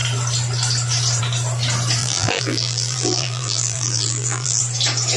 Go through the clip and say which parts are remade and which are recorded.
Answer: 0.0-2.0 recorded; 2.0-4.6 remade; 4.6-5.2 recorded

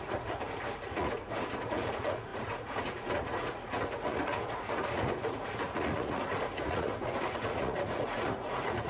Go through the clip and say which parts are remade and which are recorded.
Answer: 0.0-8.9 remade

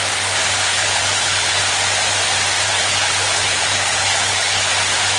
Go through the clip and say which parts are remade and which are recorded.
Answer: 0.0-0.7 recorded; 0.7-1.6 remade; 1.6-2.7 recorded; 2.7-4.7 remade; 4.7-5.2 recorded

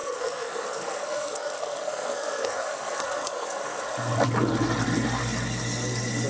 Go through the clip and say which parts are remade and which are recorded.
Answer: 0.0-3.8 remade; 3.8-6.3 recorded

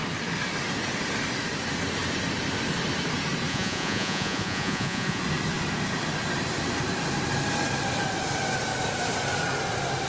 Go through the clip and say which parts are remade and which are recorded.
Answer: 0.0-3.5 recorded; 3.5-5.2 remade; 5.2-10.1 recorded

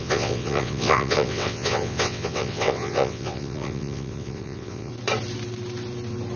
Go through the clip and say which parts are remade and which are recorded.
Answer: 0.0-4.9 remade; 4.9-6.4 recorded